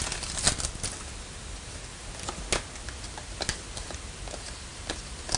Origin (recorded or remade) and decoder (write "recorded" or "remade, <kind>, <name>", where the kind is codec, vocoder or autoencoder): recorded